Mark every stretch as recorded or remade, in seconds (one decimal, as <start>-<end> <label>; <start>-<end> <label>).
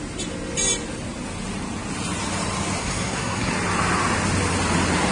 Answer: 0.0-2.8 recorded; 2.8-3.5 remade; 3.5-5.1 recorded